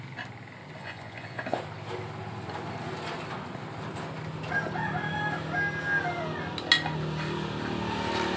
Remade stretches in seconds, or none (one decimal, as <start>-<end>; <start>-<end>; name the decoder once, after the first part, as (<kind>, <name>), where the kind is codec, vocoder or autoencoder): 0.8-1.6 (vocoder, Vocos)